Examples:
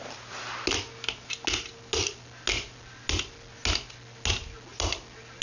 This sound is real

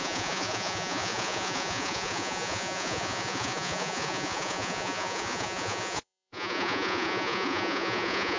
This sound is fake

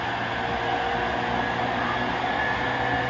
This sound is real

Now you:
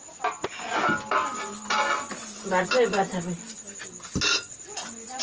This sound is real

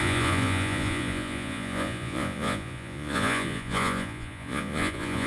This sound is fake